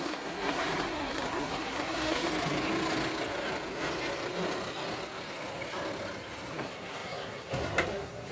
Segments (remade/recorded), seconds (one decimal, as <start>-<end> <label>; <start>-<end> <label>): 0.0-2.3 remade; 2.3-6.5 recorded; 6.5-8.3 remade

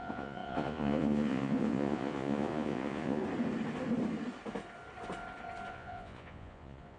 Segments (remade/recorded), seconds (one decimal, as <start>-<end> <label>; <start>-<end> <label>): 0.0-3.2 remade; 3.2-5.7 recorded; 5.7-7.0 remade

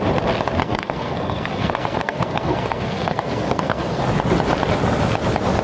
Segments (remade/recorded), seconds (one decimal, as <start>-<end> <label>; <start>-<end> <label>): 0.0-0.6 recorded; 0.6-4.0 remade; 4.0-5.6 recorded

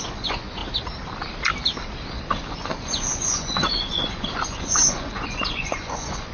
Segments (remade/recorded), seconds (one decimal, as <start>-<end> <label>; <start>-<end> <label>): 0.0-0.6 remade; 0.6-2.5 recorded; 2.5-6.3 remade

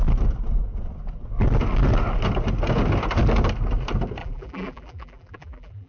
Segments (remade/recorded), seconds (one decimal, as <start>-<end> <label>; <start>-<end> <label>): 0.0-4.2 recorded; 4.2-5.9 remade